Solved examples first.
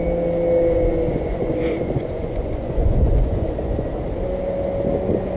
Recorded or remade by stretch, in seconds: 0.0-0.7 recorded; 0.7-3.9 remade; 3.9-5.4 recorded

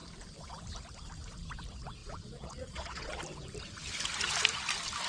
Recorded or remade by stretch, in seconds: 0.0-2.0 recorded; 2.0-3.2 remade; 3.2-5.1 recorded